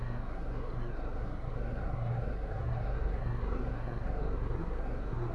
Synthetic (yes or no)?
yes